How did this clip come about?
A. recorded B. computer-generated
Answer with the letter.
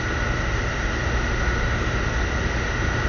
A